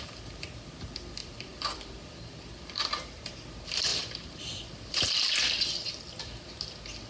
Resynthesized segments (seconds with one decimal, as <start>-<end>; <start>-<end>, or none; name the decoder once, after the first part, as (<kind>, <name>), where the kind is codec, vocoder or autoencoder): 1.2-2.9 (vocoder, BigVGAN v2)